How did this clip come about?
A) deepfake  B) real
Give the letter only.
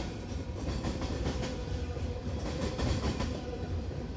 A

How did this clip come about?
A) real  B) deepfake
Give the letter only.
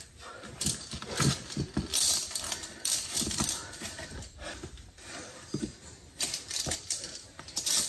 B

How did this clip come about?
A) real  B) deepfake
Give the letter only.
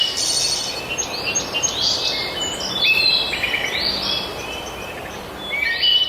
A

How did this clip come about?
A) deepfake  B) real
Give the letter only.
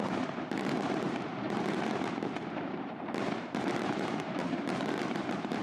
A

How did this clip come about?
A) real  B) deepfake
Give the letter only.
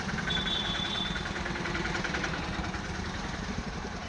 B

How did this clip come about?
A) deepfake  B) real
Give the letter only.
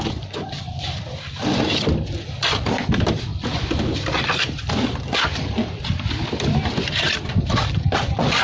A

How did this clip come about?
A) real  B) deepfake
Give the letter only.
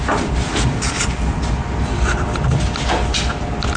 A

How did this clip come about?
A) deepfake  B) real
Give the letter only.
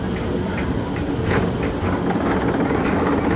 B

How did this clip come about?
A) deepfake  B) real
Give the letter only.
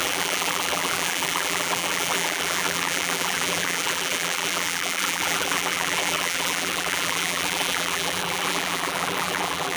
A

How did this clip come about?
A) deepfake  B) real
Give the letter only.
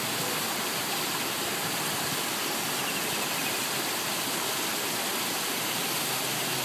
B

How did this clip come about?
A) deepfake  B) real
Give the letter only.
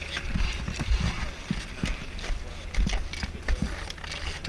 B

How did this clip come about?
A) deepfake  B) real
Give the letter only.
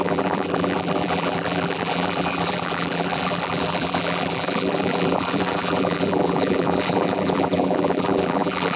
A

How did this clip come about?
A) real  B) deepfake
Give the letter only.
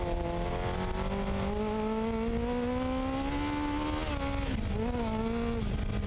A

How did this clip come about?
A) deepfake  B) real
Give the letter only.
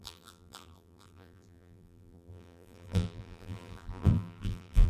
A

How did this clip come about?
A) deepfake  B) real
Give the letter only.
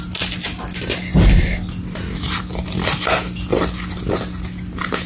B